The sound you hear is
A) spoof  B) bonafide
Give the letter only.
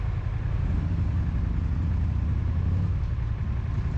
B